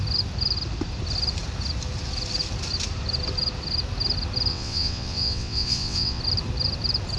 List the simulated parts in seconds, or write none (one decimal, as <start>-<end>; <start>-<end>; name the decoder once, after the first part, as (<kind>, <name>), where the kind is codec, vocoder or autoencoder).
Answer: 4.5-6.2 (vocoder, WaveNeXt)

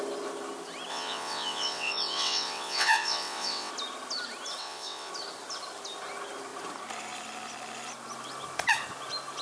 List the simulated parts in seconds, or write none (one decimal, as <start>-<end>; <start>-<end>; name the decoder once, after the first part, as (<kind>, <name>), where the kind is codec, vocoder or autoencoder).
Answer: 0.9-3.7 (vocoder, WaveNeXt); 4.6-5.1

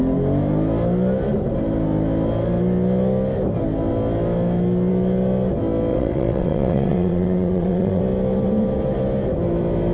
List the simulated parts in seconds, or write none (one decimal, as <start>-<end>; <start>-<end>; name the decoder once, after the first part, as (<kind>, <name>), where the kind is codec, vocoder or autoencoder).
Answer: 5.9-8.0 (vocoder, WaveNeXt)

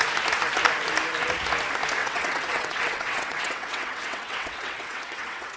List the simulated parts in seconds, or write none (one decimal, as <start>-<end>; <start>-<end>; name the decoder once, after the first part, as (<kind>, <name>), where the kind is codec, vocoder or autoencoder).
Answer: 2.0-5.6 (vocoder, WaveNeXt)

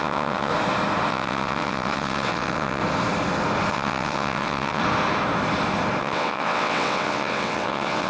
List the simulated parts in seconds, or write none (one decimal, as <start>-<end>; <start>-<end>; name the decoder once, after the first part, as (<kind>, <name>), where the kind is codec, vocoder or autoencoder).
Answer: 0.0-0.5 (vocoder, WaveNeXt); 1.1-2.8; 3.7-4.8; 6.0-8.1

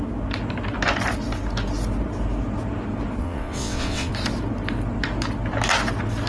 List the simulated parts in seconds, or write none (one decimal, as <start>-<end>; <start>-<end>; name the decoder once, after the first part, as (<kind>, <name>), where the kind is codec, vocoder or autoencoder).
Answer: 3.2-4.1 (vocoder, WaveNeXt)

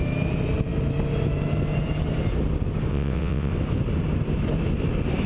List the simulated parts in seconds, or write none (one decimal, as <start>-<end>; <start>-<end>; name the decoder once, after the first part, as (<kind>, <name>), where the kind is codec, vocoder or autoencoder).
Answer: 2.9-3.5 (vocoder, WaveNeXt)

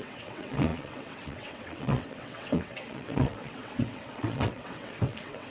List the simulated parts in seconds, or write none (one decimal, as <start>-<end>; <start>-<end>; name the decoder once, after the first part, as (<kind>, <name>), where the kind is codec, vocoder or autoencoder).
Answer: 0.0-5.5 (vocoder, WaveNeXt)